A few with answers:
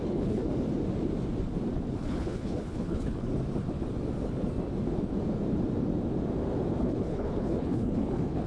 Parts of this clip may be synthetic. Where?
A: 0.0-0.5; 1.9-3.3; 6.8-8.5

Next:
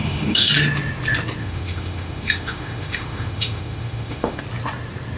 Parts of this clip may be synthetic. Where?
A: 0.0-0.5; 1.4-4.4

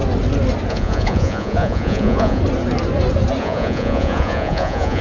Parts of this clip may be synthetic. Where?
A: 0.7-2.4; 3.4-5.0

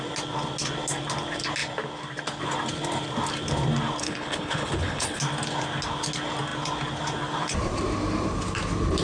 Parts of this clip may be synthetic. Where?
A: 4.0-5.2

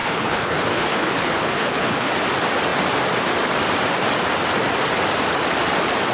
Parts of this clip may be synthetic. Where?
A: 0.0-2.1

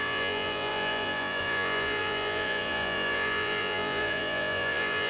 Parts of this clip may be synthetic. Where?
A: 0.0-5.1